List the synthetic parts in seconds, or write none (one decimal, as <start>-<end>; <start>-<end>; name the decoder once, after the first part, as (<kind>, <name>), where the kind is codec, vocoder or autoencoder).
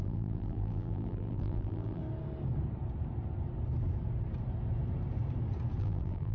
0.0-2.0 (vocoder, BigVGAN v2); 5.8-6.3